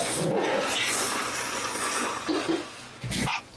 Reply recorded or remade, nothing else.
remade